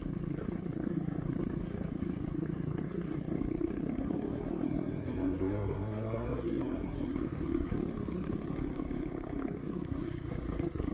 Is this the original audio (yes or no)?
no